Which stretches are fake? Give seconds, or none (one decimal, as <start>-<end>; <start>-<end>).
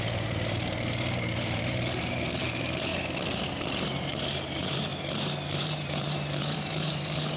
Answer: 0.0-2.9; 3.5-4.9; 5.5-7.4